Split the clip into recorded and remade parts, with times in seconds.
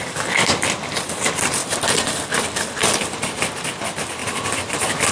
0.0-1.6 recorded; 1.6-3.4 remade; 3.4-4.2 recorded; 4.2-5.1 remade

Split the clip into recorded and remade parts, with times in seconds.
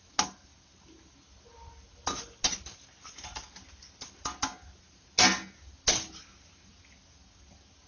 0.0-7.9 recorded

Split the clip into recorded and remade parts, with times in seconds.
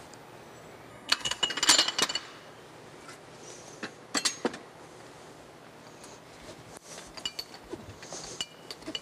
0.0-0.9 recorded; 0.9-1.4 remade; 1.4-9.0 recorded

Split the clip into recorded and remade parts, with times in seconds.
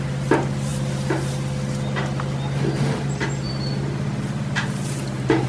0.0-5.5 recorded